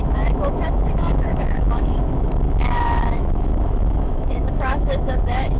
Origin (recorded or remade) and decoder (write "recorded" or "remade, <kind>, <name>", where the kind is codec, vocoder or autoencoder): remade, autoencoder, DAC-VAE